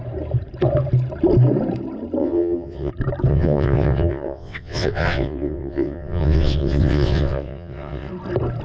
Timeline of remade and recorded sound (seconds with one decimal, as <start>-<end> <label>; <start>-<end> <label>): 0.0-2.2 recorded; 2.2-2.9 remade; 2.9-3.3 recorded; 3.3-8.1 remade; 8.1-8.6 recorded